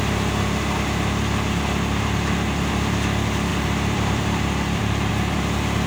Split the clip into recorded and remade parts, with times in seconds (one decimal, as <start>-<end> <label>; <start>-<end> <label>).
0.0-3.5 recorded; 3.5-5.1 remade; 5.1-5.9 recorded